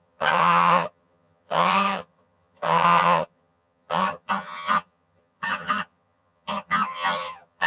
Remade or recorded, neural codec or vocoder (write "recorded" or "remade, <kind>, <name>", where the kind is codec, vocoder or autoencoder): remade, vocoder, HiFi-GAN